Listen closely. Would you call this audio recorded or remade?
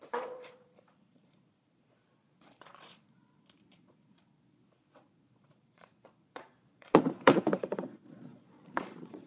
remade